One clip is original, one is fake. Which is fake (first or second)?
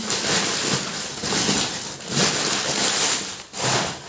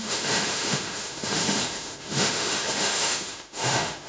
second